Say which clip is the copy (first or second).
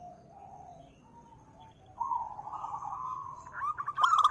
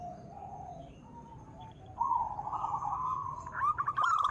second